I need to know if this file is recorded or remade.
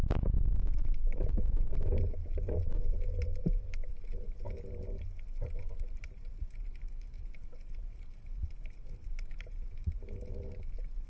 remade